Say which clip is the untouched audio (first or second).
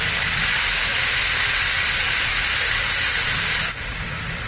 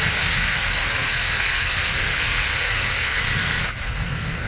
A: first